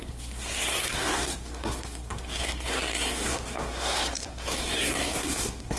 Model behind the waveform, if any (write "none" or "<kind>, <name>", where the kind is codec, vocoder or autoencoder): codec, SNAC